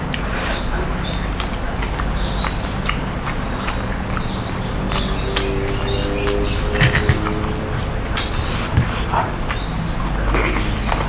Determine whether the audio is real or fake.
real